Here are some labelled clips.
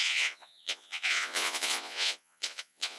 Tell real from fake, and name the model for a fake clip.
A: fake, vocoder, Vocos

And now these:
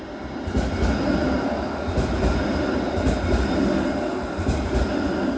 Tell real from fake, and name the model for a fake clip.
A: real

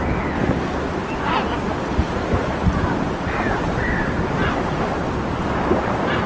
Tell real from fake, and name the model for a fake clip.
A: real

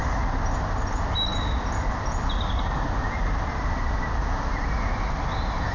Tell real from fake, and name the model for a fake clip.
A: real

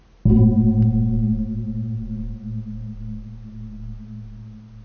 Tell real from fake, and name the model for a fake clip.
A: real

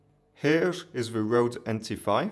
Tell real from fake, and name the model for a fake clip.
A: fake, vocoder, Vocos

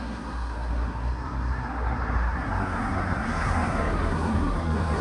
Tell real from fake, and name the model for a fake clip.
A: fake, codec, SNAC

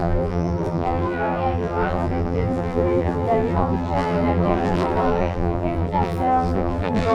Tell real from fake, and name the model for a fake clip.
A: fake, vocoder, BigVGAN v2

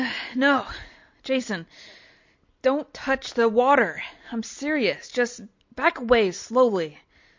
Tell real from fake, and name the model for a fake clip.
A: real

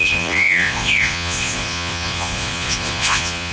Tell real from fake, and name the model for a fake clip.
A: fake, vocoder, Vocos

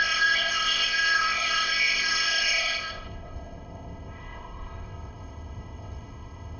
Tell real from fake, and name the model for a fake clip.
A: fake, codec, ZipCodec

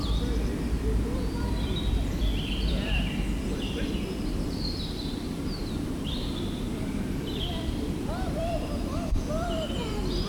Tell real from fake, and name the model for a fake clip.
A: fake, vocoder, BigVGAN v2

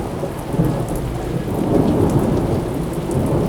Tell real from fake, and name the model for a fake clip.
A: real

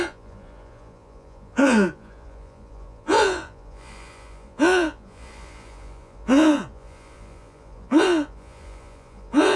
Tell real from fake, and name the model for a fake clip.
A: fake, vocoder, Vocos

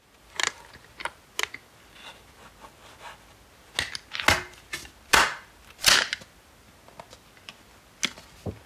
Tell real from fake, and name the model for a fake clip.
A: real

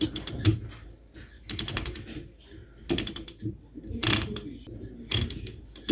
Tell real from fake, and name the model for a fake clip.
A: real